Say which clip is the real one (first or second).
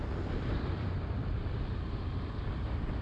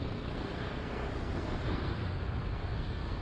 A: first